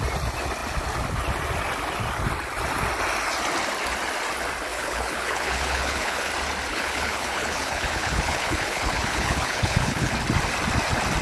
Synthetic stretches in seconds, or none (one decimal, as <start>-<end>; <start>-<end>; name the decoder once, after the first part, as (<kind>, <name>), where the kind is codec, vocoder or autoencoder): 4.7-6.3 (codec, HILCodec); 6.7-10.1